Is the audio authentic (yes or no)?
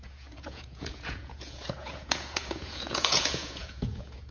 no